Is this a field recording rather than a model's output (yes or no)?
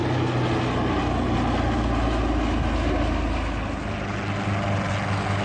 yes